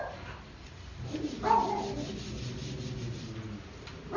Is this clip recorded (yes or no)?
yes